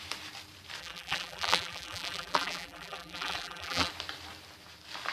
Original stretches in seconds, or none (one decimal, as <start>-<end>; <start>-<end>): 0.0-0.8; 3.9-5.1